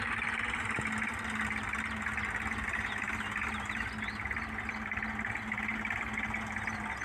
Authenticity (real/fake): real